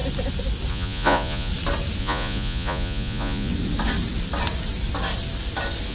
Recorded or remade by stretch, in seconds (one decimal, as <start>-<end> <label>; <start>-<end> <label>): 0.0-0.7 recorded; 0.7-1.5 remade; 1.5-2.0 recorded; 2.0-3.5 remade; 3.5-5.9 recorded